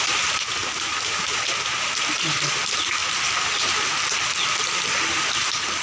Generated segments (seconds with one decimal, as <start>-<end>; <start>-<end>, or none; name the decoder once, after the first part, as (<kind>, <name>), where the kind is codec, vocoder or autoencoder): 3.0-4.6 (vocoder, BigVGAN v2)